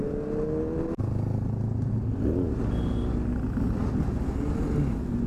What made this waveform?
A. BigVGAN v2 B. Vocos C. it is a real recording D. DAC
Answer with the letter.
C